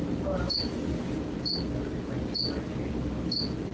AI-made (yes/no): no